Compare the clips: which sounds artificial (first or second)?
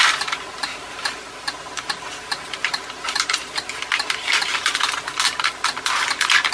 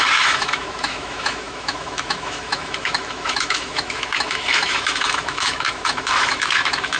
second